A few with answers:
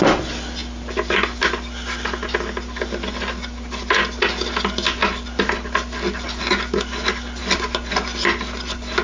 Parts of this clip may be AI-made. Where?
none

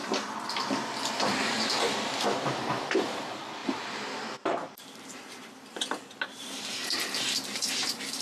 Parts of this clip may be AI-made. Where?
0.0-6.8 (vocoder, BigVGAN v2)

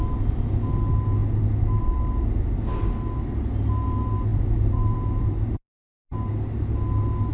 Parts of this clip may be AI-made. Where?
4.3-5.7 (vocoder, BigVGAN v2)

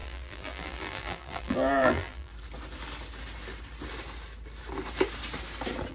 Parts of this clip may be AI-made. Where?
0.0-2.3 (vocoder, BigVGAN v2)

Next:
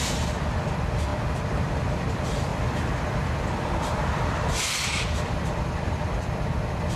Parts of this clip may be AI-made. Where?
0.0-1.1 (vocoder, BigVGAN v2); 1.8-2.5; 4.1-7.0